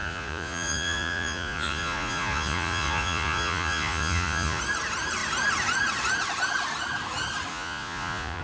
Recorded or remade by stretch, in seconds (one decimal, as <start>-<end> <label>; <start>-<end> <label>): 0.0-4.6 remade; 4.6-7.5 recorded; 7.5-8.4 remade